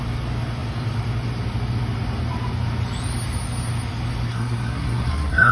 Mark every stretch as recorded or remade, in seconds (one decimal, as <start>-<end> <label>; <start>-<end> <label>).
0.0-4.3 recorded; 4.3-5.5 remade